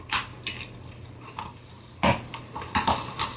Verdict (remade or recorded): recorded